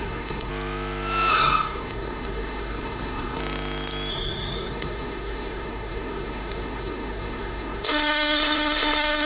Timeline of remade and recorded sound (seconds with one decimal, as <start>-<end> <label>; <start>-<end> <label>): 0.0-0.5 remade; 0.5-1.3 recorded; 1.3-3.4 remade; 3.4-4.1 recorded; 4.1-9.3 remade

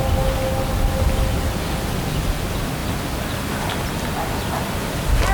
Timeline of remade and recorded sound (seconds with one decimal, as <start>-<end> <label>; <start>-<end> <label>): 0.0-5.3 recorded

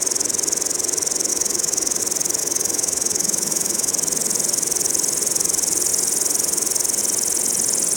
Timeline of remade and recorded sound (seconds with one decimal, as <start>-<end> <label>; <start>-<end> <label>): 0.0-1.3 recorded; 1.3-2.0 remade; 2.0-2.4 recorded; 2.4-3.9 remade; 3.9-8.0 recorded

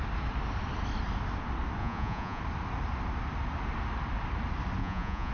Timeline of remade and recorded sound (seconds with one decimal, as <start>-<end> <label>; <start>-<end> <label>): 0.0-1.8 recorded; 1.8-2.4 remade; 2.4-4.8 recorded; 4.8-5.3 remade

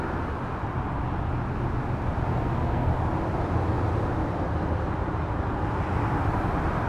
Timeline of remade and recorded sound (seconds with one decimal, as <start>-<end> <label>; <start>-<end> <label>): 0.0-2.3 recorded; 2.3-2.9 remade; 2.9-6.9 recorded

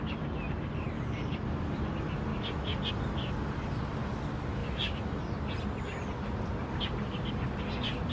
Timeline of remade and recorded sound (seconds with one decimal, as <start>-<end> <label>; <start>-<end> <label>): 0.0-4.6 recorded; 4.6-5.2 remade; 5.2-8.1 recorded